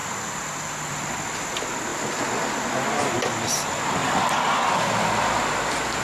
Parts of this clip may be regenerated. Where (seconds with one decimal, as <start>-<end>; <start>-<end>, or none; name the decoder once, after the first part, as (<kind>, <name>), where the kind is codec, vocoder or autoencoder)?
0.0-1.2 (vocoder, BigVGAN v2)

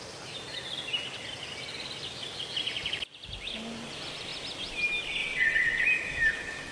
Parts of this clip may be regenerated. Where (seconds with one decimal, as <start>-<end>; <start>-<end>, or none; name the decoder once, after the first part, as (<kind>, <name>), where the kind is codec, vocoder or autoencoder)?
5.2-5.8 (vocoder, WaveNeXt)